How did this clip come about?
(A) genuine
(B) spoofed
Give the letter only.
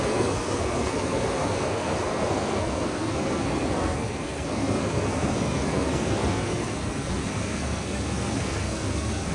B